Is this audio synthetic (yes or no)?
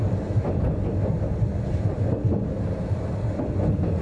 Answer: no